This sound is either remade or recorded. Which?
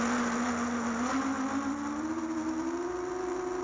recorded